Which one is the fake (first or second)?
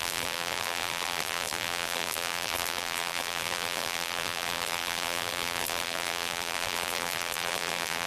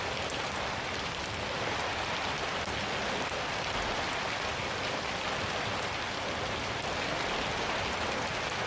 first